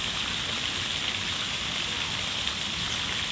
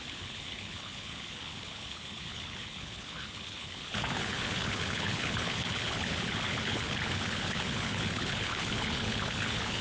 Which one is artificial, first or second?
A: second